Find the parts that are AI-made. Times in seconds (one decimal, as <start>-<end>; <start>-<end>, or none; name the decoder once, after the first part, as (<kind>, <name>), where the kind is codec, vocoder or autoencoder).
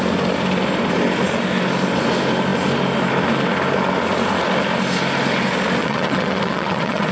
5.8-7.1 (vocoder, WaveNeXt)